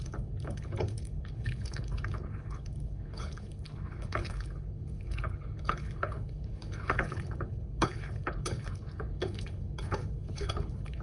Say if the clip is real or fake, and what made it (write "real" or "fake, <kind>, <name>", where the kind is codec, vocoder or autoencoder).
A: fake, codec, HILCodec